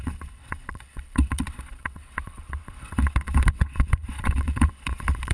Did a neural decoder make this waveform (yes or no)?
yes